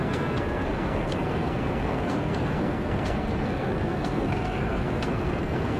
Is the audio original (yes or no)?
no